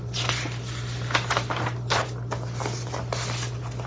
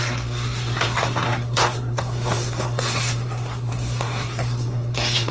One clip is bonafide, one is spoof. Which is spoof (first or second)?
second